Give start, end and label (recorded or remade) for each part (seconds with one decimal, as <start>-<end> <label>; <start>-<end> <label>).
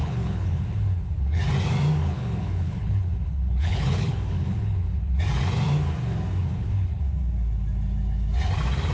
0.0-1.4 remade; 1.4-2.0 recorded; 2.0-5.2 remade; 5.2-6.4 recorded; 6.4-7.0 remade; 7.0-8.9 recorded